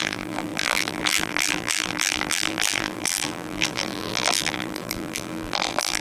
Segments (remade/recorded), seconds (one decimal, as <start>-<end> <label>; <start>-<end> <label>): 0.0-6.0 remade